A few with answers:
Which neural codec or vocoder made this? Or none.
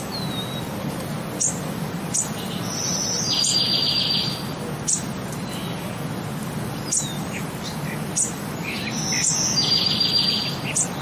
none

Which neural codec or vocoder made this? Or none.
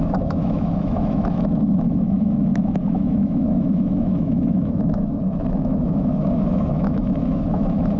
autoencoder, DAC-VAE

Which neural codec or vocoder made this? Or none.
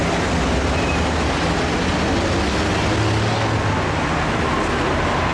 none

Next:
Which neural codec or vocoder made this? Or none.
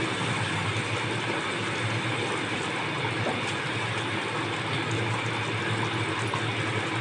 none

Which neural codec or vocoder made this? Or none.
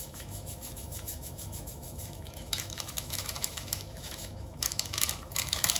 autoencoder, DAC-VAE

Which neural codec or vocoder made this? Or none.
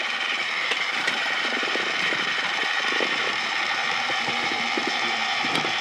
vocoder, BigVGAN v2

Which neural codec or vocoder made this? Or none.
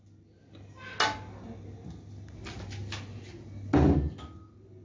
none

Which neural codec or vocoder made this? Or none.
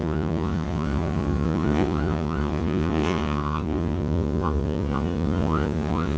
vocoder, Vocos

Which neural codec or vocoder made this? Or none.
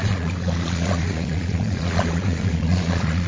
vocoder, Vocos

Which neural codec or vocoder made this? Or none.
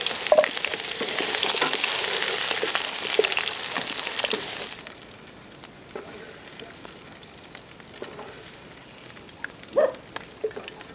none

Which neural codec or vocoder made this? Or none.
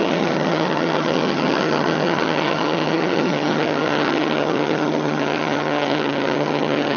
vocoder, HiFi-GAN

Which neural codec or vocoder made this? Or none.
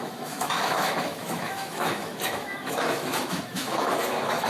autoencoder, DAC-VAE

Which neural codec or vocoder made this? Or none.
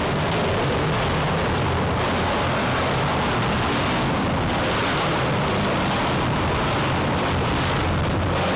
none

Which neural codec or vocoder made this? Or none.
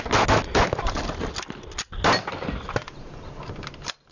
none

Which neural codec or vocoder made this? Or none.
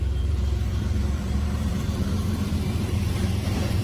vocoder, BigVGAN v2